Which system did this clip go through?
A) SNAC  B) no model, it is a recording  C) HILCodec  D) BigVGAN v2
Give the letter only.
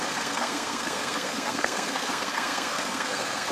A